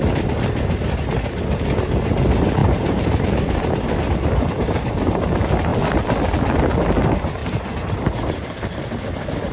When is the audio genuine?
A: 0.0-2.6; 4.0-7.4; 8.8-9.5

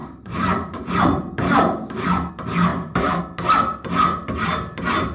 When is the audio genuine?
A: 2.3-2.7; 3.2-5.1

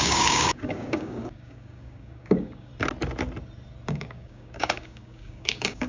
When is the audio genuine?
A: 2.7-3.9

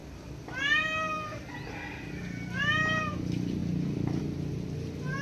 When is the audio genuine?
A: 0.0-5.2

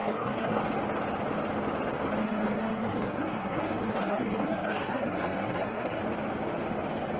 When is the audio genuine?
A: 0.6-2.2; 6.0-7.2

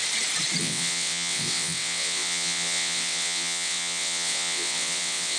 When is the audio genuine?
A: 0.0-0.6